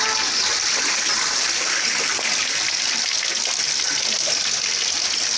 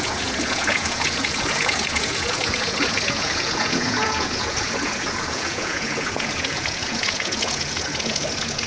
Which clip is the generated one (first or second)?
second